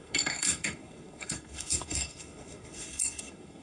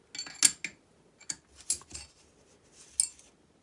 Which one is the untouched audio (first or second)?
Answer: second